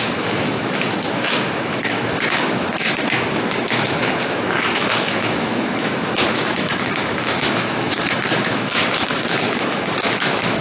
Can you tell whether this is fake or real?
fake